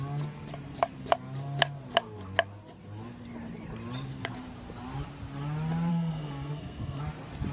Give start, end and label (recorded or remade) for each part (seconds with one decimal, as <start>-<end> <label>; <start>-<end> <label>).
0.0-5.9 recorded; 5.9-7.0 remade; 7.0-7.5 recorded